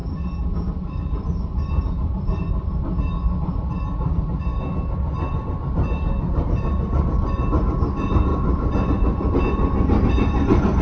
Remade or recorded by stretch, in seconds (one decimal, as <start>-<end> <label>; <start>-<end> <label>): 0.0-10.8 recorded